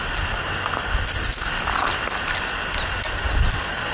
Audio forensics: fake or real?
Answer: real